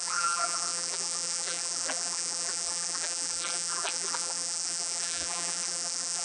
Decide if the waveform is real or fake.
fake